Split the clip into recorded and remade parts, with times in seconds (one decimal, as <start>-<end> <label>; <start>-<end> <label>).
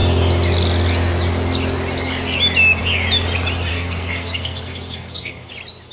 0.0-3.7 recorded; 3.7-5.5 remade; 5.5-5.9 recorded